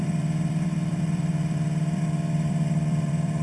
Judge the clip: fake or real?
fake